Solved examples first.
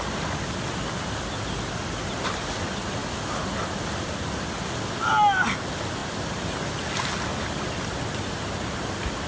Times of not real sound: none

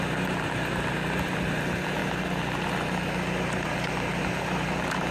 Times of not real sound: none